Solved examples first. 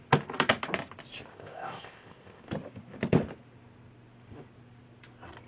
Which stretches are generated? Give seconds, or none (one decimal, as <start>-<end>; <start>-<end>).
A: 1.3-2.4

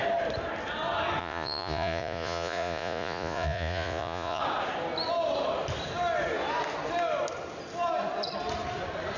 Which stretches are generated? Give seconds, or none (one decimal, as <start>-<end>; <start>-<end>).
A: 1.2-4.4

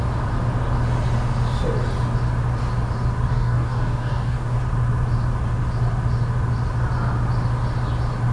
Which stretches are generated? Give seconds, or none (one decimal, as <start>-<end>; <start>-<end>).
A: 3.3-4.6

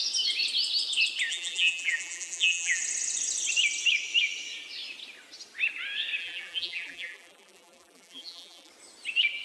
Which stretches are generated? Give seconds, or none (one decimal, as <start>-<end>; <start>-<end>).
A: 1.3-2.8; 6.2-8.7

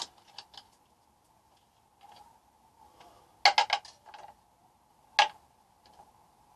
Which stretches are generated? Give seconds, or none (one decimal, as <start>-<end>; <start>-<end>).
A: none

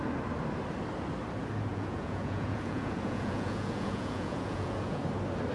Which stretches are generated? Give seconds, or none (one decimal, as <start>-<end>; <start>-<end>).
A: 1.7-5.0

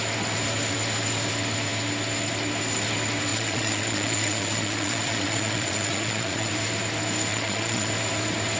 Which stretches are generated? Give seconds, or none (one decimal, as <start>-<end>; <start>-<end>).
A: 3.3-6.5; 7.3-7.9